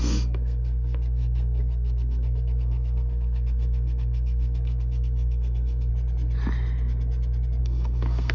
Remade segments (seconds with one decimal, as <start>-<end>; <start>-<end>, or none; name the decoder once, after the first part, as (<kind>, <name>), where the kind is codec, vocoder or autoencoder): 0.0-5.9 (codec, SNAC); 7.6-8.3